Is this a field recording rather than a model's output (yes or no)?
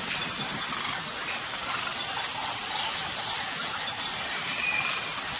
yes